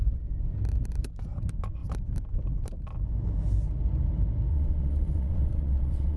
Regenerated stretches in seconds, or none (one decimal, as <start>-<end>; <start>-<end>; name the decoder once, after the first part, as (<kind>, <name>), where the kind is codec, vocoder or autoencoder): 4.5-6.2 (vocoder, WaveNeXt)